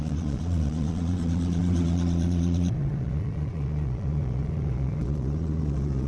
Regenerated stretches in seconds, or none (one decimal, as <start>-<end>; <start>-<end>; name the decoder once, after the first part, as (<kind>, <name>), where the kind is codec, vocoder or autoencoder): 0.0-6.1 (vocoder, Vocos)